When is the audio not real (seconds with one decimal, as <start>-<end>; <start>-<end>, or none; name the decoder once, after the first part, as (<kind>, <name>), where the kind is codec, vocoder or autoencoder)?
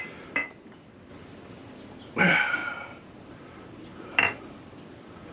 0.4-1.1 (vocoder, BigVGAN v2); 2.6-3.3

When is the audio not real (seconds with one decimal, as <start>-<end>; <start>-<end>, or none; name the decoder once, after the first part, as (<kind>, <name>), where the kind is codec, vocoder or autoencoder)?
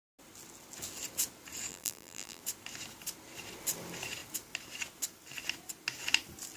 1.7-2.4 (vocoder, BigVGAN v2)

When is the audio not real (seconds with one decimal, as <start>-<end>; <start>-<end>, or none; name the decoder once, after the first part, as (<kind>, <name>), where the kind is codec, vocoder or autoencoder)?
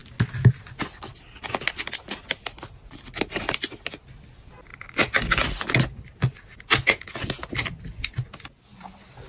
none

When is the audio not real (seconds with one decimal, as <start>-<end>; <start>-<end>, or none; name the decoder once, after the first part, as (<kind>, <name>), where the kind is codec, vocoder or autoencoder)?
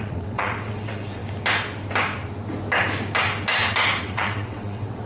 0.0-1.2 (vocoder, WaveNeXt); 4.0-5.1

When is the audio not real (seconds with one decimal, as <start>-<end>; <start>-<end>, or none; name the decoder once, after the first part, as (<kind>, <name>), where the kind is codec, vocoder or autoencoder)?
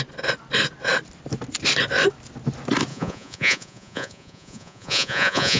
2.9-5.6 (vocoder, Vocos)